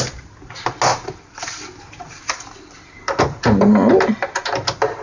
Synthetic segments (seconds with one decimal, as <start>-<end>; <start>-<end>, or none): none